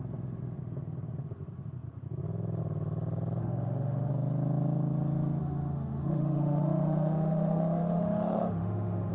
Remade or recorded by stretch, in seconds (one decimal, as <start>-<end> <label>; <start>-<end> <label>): 0.0-3.4 recorded; 3.4-4.1 remade; 4.1-5.4 recorded; 5.4-9.1 remade